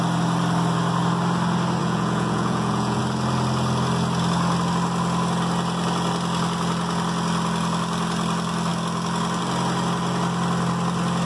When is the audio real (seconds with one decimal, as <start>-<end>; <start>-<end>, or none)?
0.0-1.8; 3.0-11.3